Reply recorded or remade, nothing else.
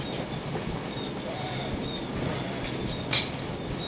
recorded